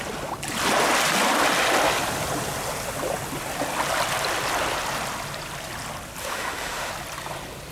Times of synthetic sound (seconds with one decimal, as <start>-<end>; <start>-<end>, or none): 6.2-6.9